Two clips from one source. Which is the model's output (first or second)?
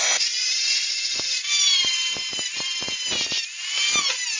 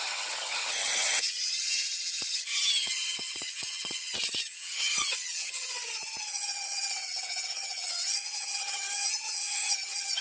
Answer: second